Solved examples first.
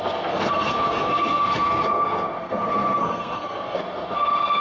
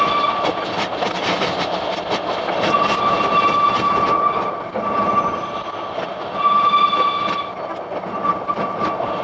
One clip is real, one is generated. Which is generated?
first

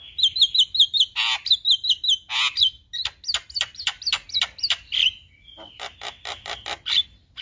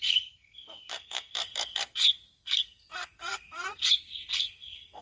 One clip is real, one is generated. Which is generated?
second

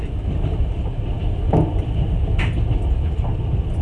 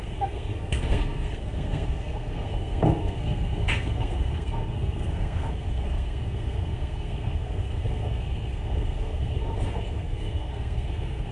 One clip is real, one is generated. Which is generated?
second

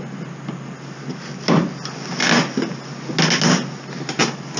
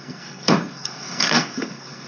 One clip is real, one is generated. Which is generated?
second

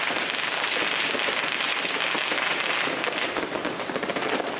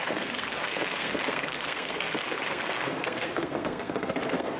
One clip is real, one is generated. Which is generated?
second